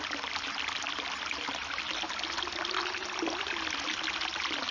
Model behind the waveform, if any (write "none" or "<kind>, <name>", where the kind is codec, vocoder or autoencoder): none